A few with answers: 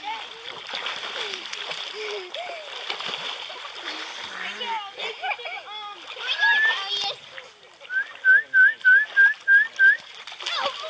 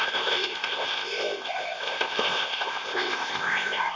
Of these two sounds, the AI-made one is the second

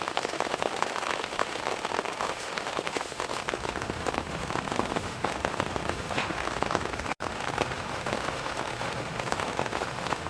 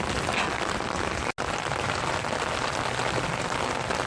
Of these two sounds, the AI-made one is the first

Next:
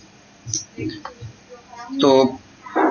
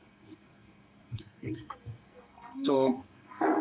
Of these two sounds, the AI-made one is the second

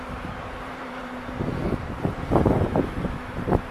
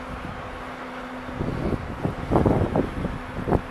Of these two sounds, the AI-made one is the first